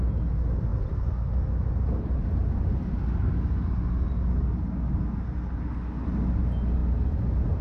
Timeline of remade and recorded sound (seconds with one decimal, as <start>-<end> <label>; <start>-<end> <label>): 0.0-7.6 recorded